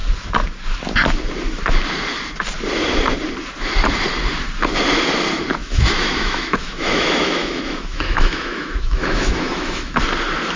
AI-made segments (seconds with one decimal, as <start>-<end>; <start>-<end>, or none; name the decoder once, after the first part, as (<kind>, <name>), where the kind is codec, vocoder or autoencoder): 5.6-10.0 (autoencoder, DAC-VAE)

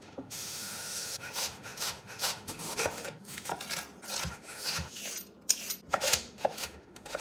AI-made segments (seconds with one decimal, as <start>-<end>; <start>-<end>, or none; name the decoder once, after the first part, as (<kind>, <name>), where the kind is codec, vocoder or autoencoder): 0.0-3.5 (autoencoder, DAC-VAE); 4.3-5.0; 5.9-7.2